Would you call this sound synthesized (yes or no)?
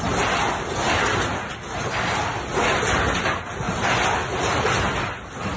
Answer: no